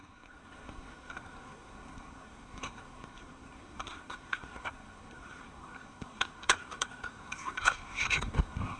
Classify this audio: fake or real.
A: fake